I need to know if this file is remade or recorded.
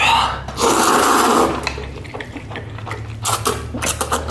recorded